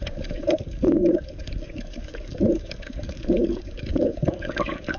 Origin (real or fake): fake